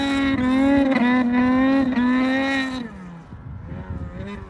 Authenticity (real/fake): real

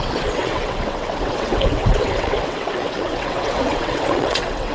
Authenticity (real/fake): fake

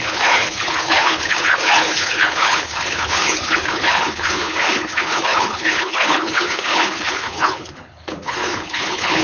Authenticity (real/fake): fake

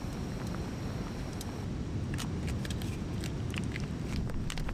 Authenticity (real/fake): real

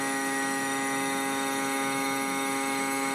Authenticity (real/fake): fake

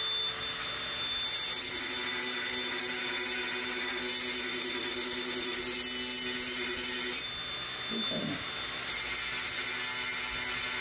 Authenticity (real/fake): real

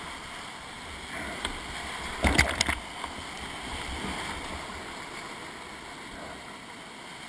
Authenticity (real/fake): real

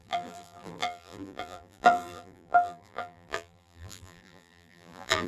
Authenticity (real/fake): fake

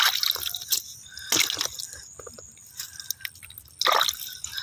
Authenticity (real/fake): real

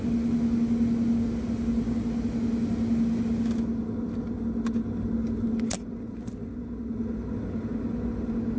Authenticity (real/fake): real